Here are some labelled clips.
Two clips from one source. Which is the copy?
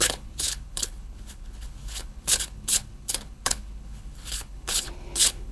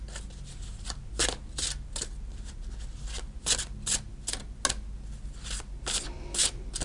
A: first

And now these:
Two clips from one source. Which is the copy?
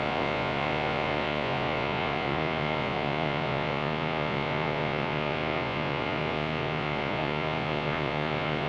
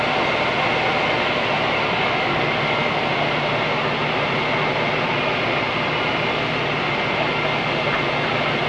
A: first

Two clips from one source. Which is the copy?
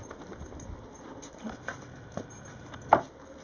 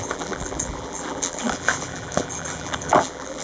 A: second